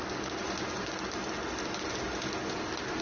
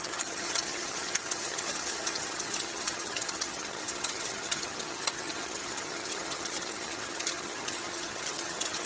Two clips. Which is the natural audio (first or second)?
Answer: first